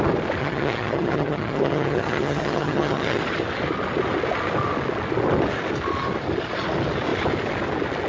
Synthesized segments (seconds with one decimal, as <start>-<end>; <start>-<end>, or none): 0.4-3.2